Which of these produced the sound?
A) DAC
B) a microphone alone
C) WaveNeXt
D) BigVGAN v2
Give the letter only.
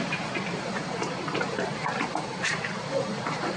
D